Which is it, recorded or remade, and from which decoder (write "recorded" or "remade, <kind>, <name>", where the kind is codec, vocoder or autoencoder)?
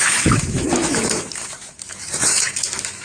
remade, autoencoder, DAC-VAE